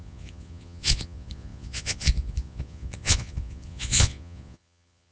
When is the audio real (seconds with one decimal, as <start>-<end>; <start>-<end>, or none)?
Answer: none